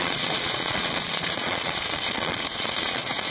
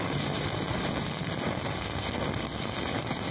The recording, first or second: second